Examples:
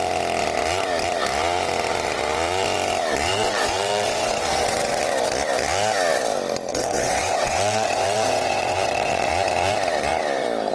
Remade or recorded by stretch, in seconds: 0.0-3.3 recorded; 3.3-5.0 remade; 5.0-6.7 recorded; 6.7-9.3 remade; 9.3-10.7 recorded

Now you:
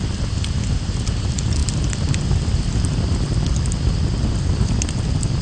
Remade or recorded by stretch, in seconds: 0.0-5.4 recorded

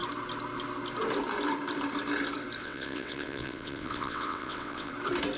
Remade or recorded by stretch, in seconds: 0.0-2.6 recorded; 2.6-4.9 remade; 4.9-5.4 recorded